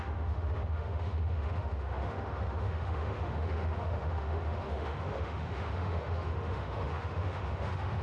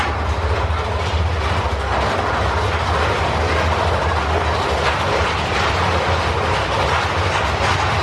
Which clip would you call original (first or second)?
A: second